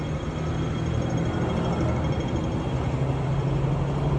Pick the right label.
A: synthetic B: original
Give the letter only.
B